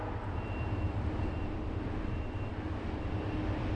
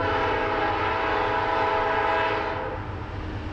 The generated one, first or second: first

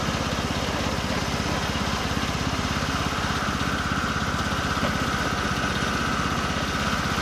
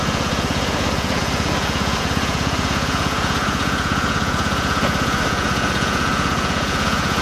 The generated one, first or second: second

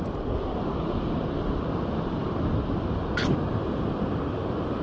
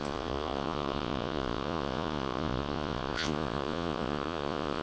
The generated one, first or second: second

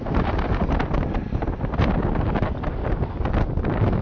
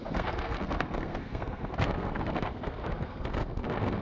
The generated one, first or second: second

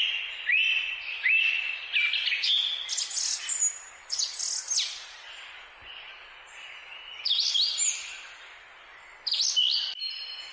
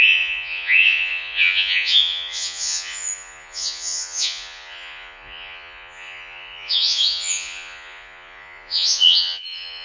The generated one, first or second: second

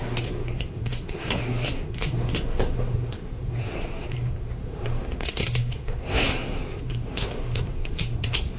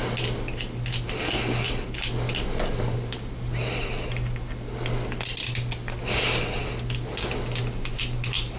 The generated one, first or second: first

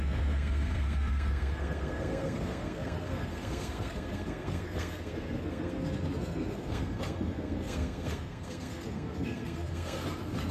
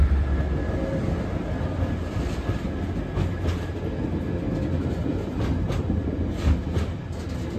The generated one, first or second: first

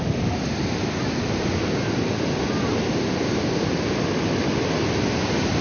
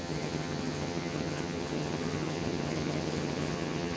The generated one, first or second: second